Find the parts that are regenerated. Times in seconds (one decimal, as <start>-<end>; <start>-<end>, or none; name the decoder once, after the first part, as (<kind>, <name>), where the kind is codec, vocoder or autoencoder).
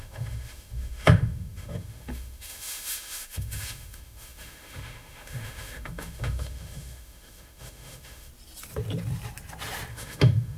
0.0-8.3 (autoencoder, DAC-VAE); 9.9-10.6